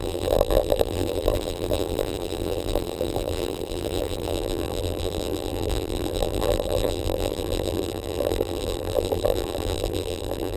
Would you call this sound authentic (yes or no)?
no